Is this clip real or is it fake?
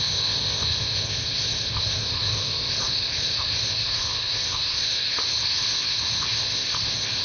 fake